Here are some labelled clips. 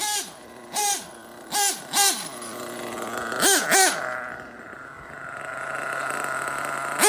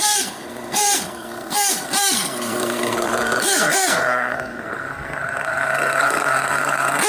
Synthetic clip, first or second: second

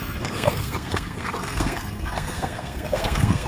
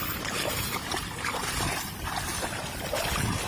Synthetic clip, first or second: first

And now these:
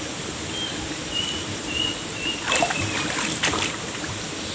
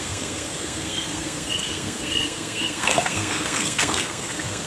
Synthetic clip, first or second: second